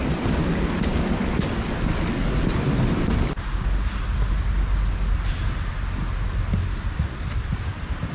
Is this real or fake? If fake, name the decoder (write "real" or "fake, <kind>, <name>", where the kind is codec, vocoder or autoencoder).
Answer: real